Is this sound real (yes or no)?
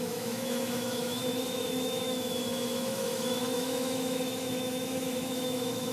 no